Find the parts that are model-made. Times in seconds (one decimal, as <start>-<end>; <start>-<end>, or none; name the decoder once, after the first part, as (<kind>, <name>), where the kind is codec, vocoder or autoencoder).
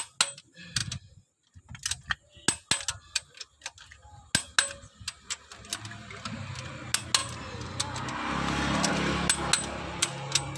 none